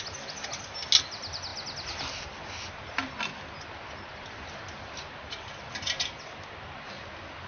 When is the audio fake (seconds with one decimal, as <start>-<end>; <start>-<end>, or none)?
none